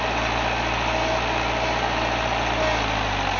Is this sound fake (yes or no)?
no